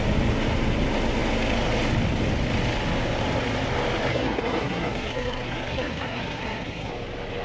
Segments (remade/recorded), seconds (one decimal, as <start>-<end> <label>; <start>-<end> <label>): 0.0-4.1 recorded; 4.1-6.9 remade; 6.9-7.4 recorded

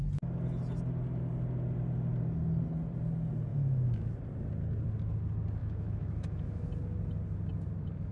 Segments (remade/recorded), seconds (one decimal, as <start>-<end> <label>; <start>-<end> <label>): 0.0-3.5 recorded; 3.5-4.1 remade; 4.1-5.6 recorded; 5.6-6.7 remade; 6.7-8.1 recorded

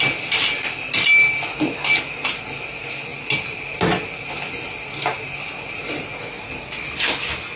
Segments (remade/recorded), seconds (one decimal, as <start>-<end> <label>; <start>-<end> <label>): 0.0-7.6 recorded

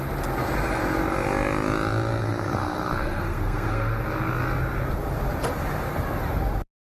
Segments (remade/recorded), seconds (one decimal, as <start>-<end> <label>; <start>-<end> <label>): 0.0-2.2 recorded; 2.2-4.0 remade; 4.0-6.9 recorded

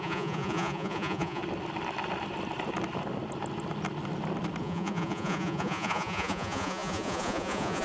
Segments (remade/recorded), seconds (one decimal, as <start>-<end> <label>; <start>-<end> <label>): 0.0-1.4 remade; 1.4-4.6 recorded; 4.6-7.8 remade

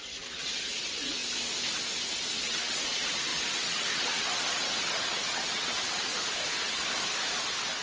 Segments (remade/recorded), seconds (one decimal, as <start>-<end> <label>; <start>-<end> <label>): 0.0-1.2 remade; 1.2-2.1 recorded; 2.1-6.1 remade; 6.1-7.8 recorded

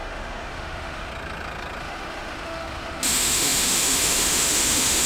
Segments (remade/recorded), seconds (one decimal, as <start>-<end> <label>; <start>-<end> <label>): 0.0-1.1 remade; 1.1-1.8 recorded; 1.8-5.1 remade

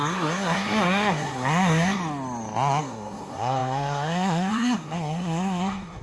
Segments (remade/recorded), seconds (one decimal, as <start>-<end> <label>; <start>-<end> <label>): 0.0-2.0 remade; 2.0-2.8 recorded; 2.8-6.0 remade